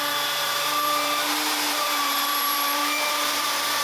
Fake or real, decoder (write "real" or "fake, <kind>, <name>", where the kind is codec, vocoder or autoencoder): fake, vocoder, BigVGAN v2